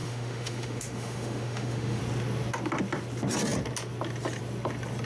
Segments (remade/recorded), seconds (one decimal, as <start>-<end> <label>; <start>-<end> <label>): 0.0-2.0 remade; 2.0-5.1 recorded